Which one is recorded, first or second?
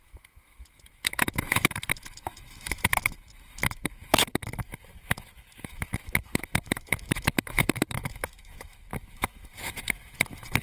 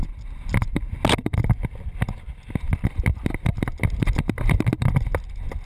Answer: second